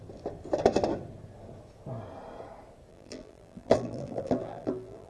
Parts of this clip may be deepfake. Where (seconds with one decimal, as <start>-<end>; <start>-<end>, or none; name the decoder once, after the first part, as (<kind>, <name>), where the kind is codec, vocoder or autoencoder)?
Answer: 2.9-5.1 (vocoder, BigVGAN v2)